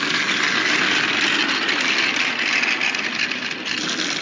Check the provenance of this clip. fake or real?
real